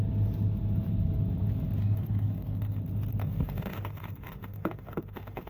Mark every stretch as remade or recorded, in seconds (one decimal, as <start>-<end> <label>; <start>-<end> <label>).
0.0-1.8 recorded; 1.8-2.8 remade; 2.8-3.2 recorded; 3.2-5.5 remade